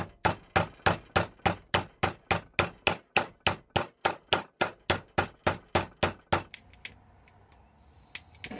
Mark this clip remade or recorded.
recorded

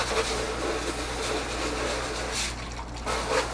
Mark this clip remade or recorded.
recorded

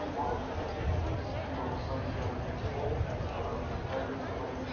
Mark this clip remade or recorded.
recorded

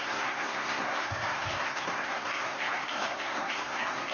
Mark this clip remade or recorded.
remade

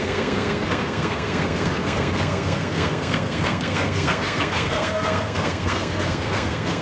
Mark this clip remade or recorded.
remade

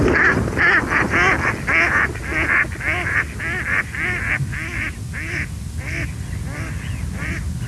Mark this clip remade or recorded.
recorded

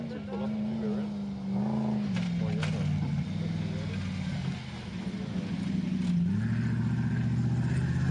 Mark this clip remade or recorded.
recorded